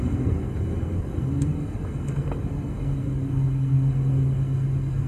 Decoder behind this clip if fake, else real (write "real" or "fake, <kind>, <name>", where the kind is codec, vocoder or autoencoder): fake, codec, SNAC